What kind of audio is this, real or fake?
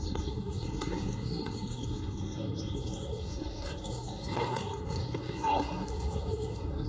fake